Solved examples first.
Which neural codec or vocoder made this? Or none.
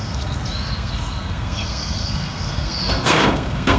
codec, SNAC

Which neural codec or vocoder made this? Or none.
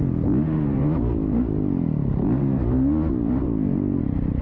none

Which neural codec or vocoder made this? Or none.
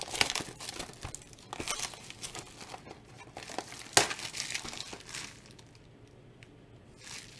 none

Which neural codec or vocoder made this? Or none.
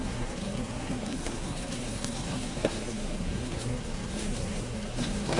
codec, SNAC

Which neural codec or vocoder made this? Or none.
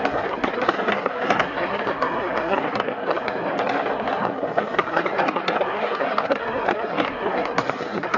codec, SNAC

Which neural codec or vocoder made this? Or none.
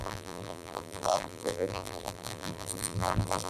vocoder, BigVGAN v2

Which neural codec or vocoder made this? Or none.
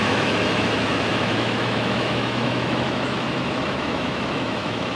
autoencoder, DAC-VAE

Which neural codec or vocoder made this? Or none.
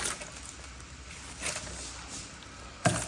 none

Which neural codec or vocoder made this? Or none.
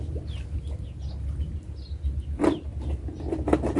none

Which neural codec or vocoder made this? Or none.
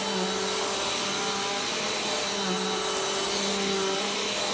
none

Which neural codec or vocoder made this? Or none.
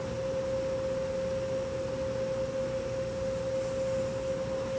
none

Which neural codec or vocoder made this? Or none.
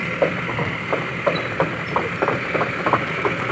vocoder, BigVGAN v2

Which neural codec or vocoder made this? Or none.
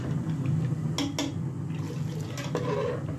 none